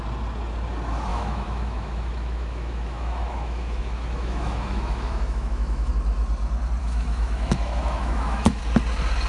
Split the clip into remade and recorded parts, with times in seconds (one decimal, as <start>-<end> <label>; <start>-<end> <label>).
0.0-1.1 recorded; 1.1-5.9 remade; 5.9-6.8 recorded; 6.8-8.6 remade; 8.6-9.3 recorded